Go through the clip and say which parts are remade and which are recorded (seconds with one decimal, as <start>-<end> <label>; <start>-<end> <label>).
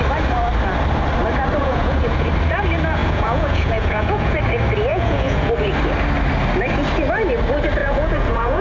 0.0-1.6 recorded; 1.6-2.3 remade; 2.3-3.0 recorded; 3.0-4.4 remade; 4.4-4.9 recorded; 4.9-5.5 remade; 5.5-7.8 recorded; 7.8-8.6 remade